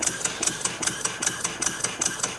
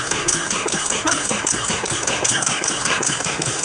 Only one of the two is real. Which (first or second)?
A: first